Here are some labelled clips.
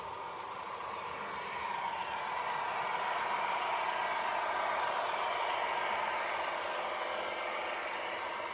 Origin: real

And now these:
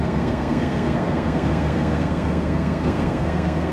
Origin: fake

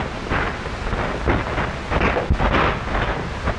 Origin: real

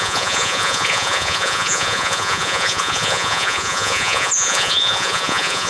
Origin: fake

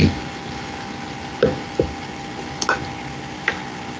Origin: real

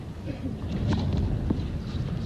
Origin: real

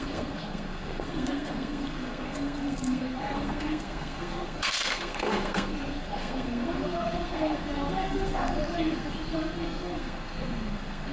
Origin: fake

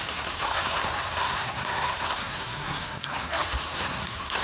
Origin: fake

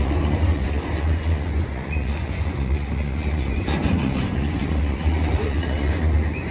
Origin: fake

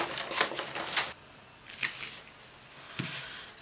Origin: real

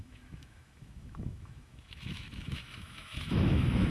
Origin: fake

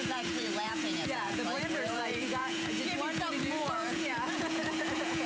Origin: fake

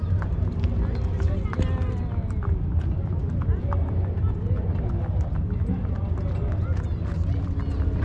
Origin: real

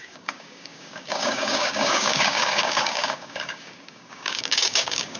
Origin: fake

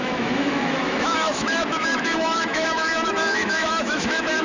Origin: fake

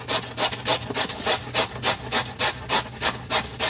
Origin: real